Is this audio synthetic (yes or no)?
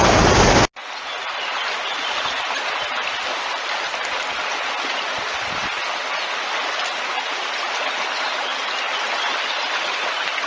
no